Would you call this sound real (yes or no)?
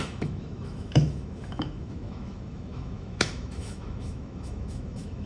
no